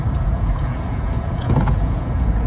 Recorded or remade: remade